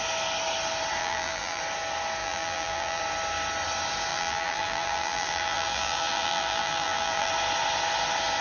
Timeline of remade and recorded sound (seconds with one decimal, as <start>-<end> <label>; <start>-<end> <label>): 0.0-1.0 recorded; 1.0-1.6 remade; 1.6-2.2 recorded; 2.2-3.0 remade; 3.0-4.1 recorded; 4.1-7.3 remade; 7.3-8.4 recorded